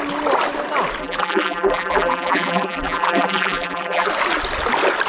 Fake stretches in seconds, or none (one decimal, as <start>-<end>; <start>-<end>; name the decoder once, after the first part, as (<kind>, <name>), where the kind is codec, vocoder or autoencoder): 1.0-4.1 (vocoder, BigVGAN v2)